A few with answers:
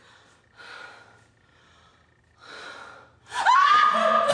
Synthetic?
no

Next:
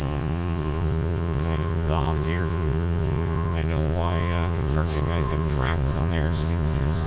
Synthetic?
yes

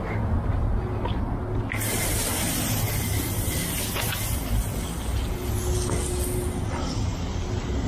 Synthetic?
no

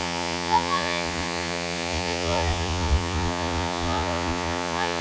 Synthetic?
yes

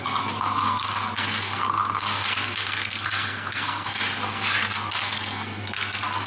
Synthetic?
yes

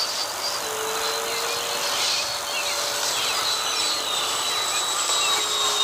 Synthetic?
no